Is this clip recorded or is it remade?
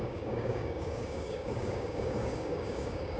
remade